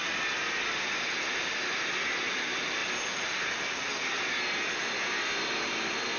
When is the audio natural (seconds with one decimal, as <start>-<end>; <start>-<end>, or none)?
0.0-6.2